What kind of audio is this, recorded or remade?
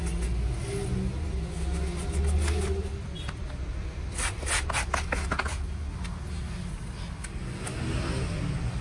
recorded